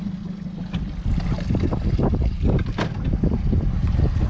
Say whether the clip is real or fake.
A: real